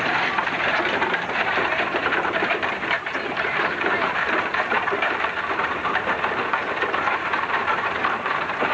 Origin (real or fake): fake